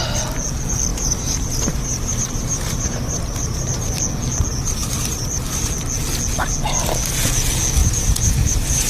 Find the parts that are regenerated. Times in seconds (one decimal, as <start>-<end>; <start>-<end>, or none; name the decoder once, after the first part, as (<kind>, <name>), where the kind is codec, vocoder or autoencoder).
0.9-4.0 (vocoder, BigVGAN v2); 4.8-5.7; 7.8-8.9